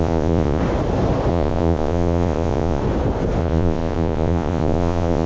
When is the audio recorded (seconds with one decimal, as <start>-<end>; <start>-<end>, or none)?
0.6-1.3; 2.8-3.4